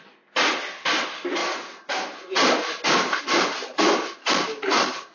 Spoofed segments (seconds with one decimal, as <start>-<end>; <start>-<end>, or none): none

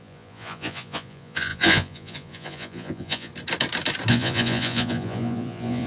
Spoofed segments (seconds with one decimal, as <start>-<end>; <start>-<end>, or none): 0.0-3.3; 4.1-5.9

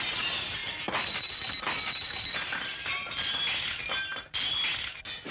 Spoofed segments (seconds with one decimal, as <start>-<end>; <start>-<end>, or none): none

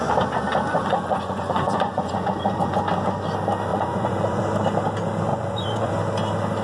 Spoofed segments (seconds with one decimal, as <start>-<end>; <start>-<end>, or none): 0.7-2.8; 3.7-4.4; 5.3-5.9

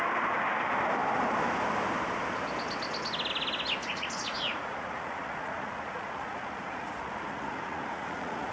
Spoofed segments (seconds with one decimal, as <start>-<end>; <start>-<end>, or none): 3.8-8.5